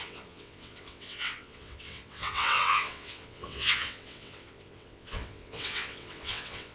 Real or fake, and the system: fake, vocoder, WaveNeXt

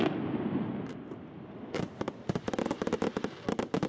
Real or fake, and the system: real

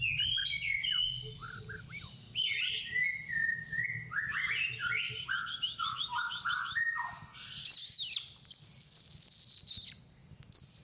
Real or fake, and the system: real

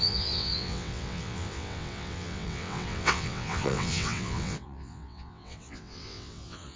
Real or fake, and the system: fake, vocoder, WaveNeXt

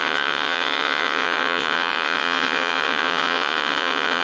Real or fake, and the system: fake, vocoder, WaveNeXt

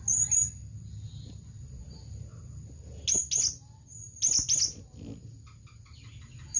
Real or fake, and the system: real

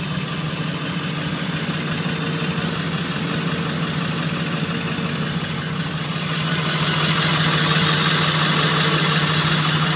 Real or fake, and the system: real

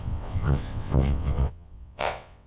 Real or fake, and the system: fake, vocoder, WaveNeXt